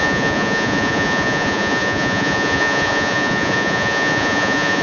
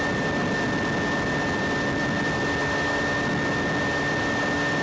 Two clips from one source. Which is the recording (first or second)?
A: second